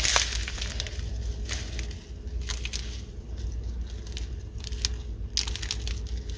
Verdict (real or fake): real